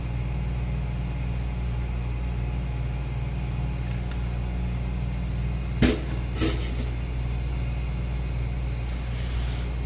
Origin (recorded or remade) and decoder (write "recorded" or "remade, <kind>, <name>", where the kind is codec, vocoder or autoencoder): recorded